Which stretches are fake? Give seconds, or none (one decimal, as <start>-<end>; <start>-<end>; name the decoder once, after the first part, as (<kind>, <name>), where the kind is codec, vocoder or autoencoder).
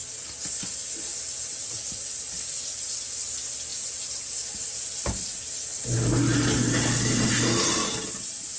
3.7-5.1 (vocoder, BigVGAN v2)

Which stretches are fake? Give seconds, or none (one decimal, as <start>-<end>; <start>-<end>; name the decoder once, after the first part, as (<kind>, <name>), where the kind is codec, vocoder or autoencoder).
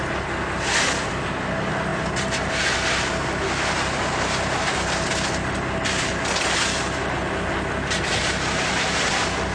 none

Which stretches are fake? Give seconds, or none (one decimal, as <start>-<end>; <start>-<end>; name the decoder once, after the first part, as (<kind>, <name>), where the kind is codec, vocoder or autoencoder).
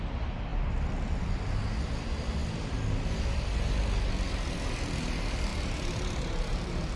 5.5-7.0 (vocoder, BigVGAN v2)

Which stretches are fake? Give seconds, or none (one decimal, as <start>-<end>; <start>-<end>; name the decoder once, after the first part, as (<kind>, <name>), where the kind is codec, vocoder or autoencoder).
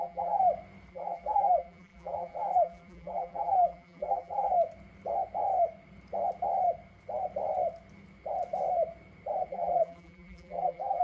0.0-0.4 (vocoder, BigVGAN v2); 0.9-4.5; 9.5-11.0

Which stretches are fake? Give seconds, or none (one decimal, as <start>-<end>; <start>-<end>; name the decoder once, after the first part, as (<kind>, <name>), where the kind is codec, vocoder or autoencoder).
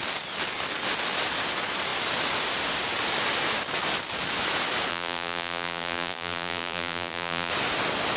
4.9-7.5 (vocoder, BigVGAN v2)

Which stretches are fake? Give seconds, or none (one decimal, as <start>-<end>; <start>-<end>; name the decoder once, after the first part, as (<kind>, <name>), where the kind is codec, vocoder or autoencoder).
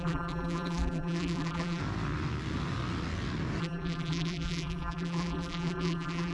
0.0-1.8 (vocoder, BigVGAN v2); 3.6-6.3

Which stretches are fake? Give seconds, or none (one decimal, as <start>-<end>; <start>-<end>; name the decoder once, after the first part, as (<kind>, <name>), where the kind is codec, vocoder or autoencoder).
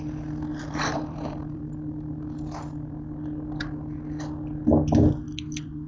0.5-1.6 (vocoder, BigVGAN v2)